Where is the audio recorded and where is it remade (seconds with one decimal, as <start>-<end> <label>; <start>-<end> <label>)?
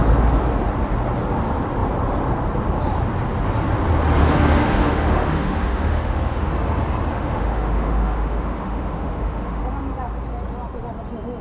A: 0.0-4.2 recorded; 4.2-6.5 remade; 6.5-7.1 recorded; 7.1-9.6 remade; 9.6-11.4 recorded